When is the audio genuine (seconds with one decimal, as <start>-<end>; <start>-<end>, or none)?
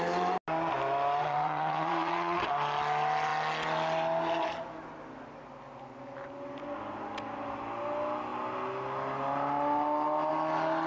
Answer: 0.0-1.2; 2.5-10.9